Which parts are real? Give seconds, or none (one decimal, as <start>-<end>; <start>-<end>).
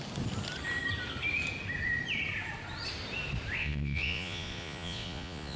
0.0-3.6